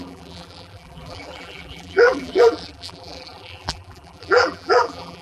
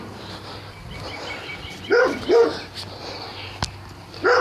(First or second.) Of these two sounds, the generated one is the first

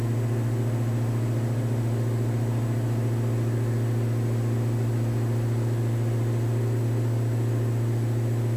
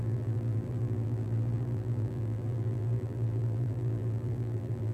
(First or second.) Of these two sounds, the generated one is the second